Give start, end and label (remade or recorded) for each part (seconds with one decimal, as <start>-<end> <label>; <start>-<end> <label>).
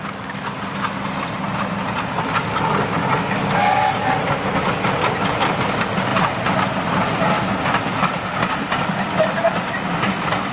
0.0-10.5 recorded